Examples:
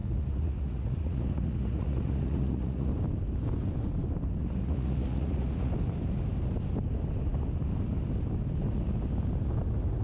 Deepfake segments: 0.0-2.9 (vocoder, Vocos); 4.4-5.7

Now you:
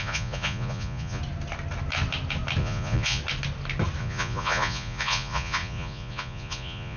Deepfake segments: 0.0-1.2 (vocoder, Vocos); 2.6-3.2; 4.0-7.0

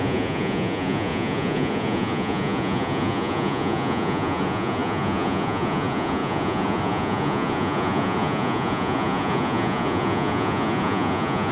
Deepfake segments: 0.0-11.5 (vocoder, Vocos)

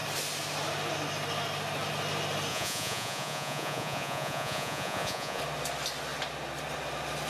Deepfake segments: 2.5-5.4 (vocoder, Vocos)

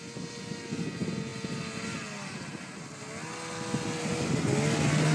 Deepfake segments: none